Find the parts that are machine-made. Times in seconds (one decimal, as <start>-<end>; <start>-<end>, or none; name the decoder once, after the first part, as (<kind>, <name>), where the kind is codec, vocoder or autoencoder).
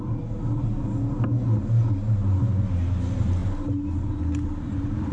none